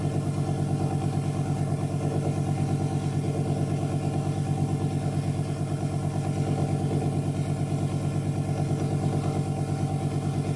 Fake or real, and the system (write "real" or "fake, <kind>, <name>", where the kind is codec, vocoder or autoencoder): real